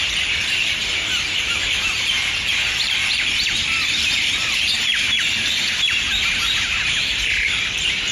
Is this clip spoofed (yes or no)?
yes